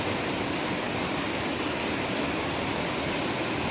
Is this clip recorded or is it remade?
recorded